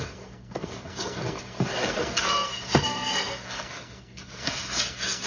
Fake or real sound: fake